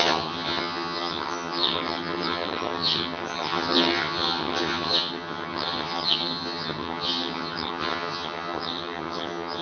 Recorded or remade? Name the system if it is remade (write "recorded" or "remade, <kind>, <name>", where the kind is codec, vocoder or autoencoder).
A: remade, vocoder, HiFi-GAN